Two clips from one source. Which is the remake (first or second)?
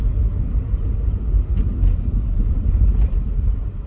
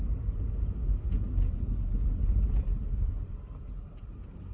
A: first